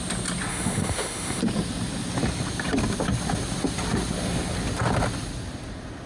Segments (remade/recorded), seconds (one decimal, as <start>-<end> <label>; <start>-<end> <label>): 0.0-0.5 recorded; 0.5-1.4 remade; 1.4-6.1 recorded

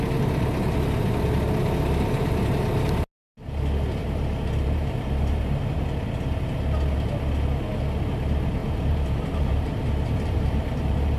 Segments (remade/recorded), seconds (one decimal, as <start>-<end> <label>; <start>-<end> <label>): 0.0-4.0 recorded; 4.0-5.8 remade; 5.8-8.6 recorded; 8.6-11.2 remade

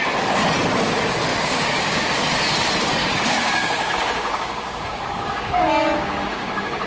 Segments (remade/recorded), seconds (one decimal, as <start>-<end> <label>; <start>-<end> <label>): 0.0-1.3 recorded; 1.3-2.2 remade; 2.2-3.0 recorded; 3.0-6.9 remade

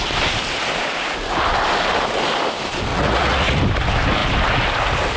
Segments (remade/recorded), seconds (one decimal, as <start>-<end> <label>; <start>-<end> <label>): 0.0-2.9 recorded; 2.9-3.6 remade; 3.6-5.2 recorded

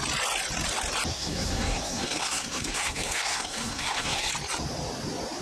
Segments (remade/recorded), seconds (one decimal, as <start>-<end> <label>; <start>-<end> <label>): 0.0-1.1 recorded; 1.1-4.3 remade; 4.3-5.4 recorded